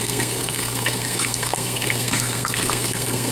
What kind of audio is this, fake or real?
fake